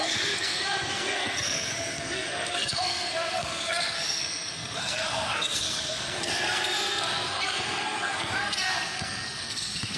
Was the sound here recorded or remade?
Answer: remade